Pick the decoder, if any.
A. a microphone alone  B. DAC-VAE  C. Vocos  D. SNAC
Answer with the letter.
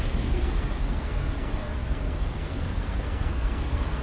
D